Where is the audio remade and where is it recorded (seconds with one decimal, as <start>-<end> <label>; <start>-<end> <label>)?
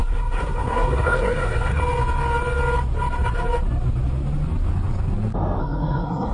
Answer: 0.0-1.8 remade; 1.8-5.6 recorded; 5.6-6.3 remade